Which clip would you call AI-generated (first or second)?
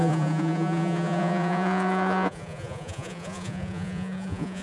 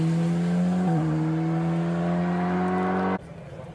first